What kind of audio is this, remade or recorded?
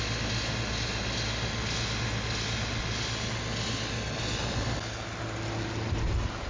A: recorded